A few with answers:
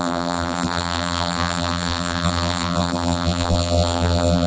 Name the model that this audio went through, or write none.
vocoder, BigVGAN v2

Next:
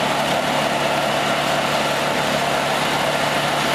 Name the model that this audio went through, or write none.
none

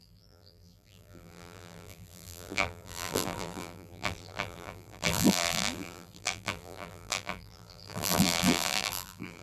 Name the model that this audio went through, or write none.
vocoder, BigVGAN v2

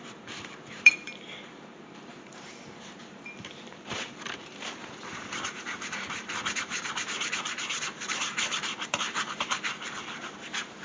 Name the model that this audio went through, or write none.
vocoder, BigVGAN v2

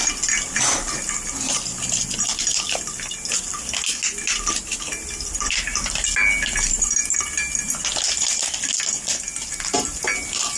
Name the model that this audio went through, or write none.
none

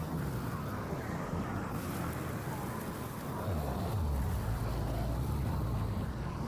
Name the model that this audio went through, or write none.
none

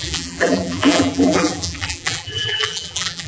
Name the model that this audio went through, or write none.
vocoder, BigVGAN v2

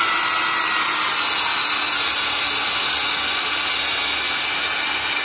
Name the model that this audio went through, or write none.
none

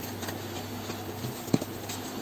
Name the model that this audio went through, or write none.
none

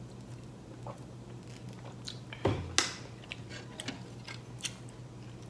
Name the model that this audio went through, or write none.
none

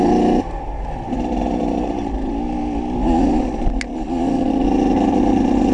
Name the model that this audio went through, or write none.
none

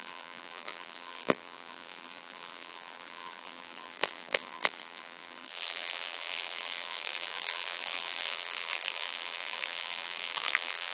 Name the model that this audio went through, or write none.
vocoder, BigVGAN v2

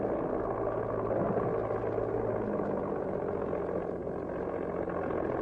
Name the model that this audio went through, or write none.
none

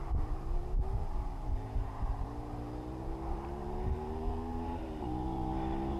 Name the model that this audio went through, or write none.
vocoder, BigVGAN v2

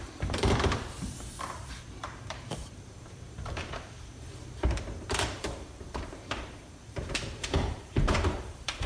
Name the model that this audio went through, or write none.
vocoder, BigVGAN v2